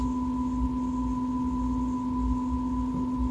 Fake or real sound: real